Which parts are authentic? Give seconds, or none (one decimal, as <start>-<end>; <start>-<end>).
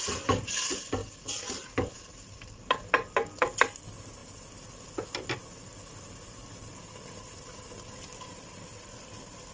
0.0-9.5